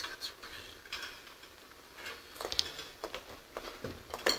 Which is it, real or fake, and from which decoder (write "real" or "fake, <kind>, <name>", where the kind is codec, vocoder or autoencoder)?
real